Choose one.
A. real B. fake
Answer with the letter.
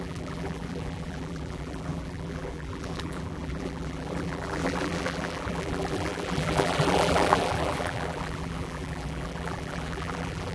B